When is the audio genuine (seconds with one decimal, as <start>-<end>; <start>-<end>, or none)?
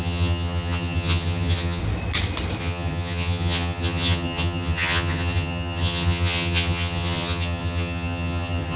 1.8-2.6